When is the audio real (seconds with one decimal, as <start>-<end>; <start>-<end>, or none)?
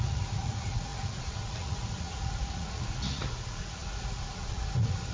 none